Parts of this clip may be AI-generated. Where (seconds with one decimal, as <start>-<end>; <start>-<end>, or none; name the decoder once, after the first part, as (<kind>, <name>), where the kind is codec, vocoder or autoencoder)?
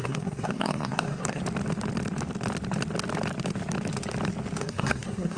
0.0-1.4 (codec, SNAC); 4.6-5.4